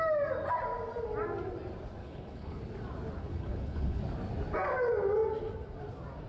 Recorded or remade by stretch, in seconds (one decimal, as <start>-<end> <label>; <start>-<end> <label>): 0.0-2.0 recorded; 2.0-2.6 remade; 2.6-3.2 recorded; 3.2-4.0 remade; 4.0-6.3 recorded